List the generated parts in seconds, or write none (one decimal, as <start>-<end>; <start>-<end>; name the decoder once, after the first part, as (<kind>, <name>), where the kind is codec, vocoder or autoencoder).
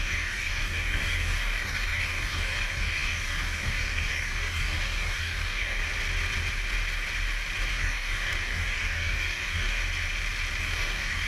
0.0-5.8 (codec, DAC); 7.7-9.8; 10.6-11.3